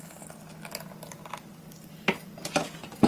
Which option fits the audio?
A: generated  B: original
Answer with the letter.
B